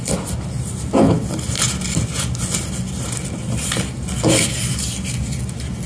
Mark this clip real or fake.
real